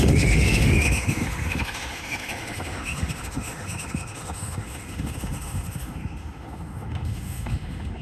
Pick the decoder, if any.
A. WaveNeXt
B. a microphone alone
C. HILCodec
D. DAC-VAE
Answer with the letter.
D